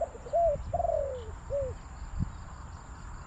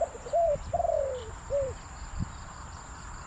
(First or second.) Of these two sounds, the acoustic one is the first